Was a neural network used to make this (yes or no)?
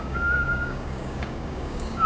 yes